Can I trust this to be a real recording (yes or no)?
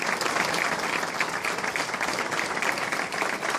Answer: yes